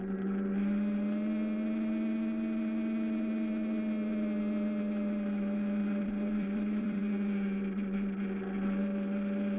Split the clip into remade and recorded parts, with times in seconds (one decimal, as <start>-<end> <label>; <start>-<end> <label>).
0.0-5.8 recorded; 5.8-7.0 remade; 7.0-9.6 recorded